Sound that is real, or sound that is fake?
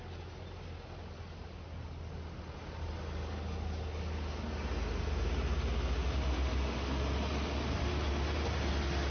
real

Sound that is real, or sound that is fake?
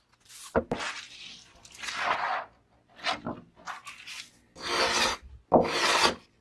real